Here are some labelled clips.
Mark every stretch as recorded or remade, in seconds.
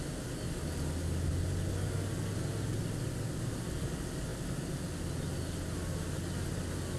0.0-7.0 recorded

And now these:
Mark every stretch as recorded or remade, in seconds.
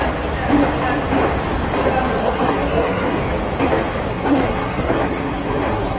0.0-2.2 recorded; 2.2-3.2 remade; 3.2-4.1 recorded; 4.1-6.0 remade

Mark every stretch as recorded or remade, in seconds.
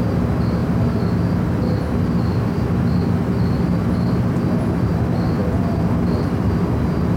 0.0-7.2 recorded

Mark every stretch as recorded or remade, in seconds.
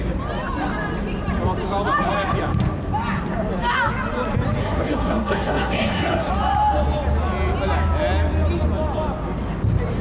0.0-4.6 recorded; 4.6-6.3 remade; 6.3-10.0 recorded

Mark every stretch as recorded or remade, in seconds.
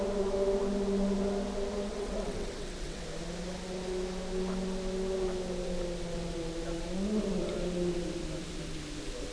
0.0-1.9 recorded; 1.9-3.0 remade; 3.0-9.3 recorded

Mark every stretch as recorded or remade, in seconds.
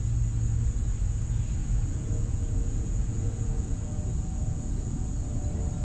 0.0-1.6 recorded; 1.6-5.1 remade; 5.1-5.8 recorded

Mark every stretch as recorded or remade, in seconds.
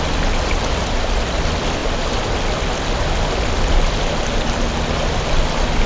0.0-5.9 recorded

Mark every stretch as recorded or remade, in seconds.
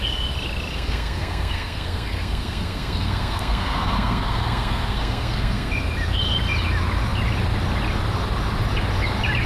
0.0-0.7 recorded; 0.7-5.7 remade; 5.7-9.5 recorded